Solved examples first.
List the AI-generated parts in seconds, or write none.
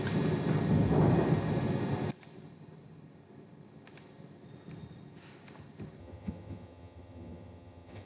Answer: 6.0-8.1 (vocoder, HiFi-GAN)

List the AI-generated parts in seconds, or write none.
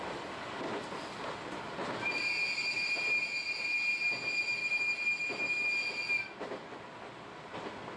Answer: 4.6-5.7 (autoencoder, DAC-VAE)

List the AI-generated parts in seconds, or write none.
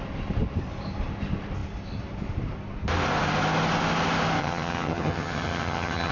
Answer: 4.4-6.1 (vocoder, HiFi-GAN)